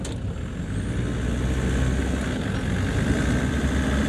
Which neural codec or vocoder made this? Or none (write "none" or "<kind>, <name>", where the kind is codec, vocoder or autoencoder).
none